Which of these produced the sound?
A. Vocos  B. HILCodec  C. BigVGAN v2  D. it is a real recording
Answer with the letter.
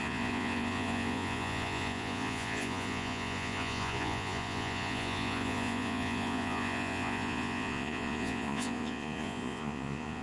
A